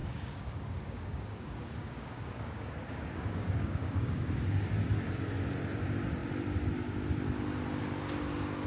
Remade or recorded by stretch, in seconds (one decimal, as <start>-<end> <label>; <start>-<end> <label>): 0.0-4.3 remade; 4.3-8.7 recorded